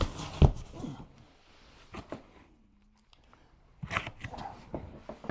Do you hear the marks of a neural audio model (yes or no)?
no